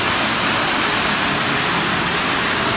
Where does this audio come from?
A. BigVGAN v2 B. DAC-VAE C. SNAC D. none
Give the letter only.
D